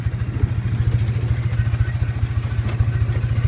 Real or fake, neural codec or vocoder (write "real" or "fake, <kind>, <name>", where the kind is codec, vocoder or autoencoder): real